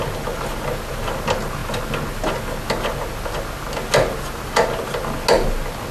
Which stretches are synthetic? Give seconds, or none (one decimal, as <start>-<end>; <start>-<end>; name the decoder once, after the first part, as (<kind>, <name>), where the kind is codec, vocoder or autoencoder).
none